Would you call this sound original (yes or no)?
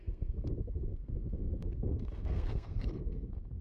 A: no